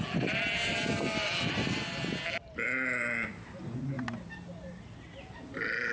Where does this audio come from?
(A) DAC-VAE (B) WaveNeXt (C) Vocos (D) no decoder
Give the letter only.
D